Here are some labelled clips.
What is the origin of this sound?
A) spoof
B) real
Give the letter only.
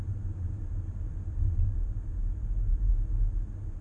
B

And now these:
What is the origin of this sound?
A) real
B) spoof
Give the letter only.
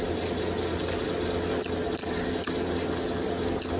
A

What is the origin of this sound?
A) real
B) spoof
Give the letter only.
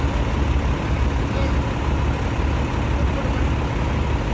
A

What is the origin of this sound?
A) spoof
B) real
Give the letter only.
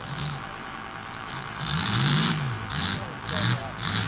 A